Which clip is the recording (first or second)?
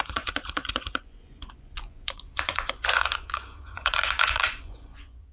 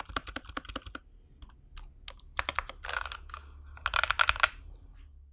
second